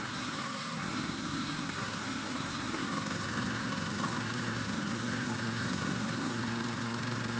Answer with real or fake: fake